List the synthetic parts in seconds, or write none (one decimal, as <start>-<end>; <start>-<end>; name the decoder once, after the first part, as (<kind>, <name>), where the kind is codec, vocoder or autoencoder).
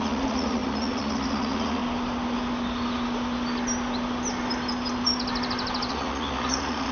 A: 0.0-1.8 (vocoder, Vocos); 5.9-6.9